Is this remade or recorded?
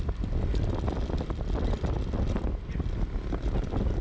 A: recorded